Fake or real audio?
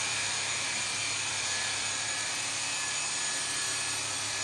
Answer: fake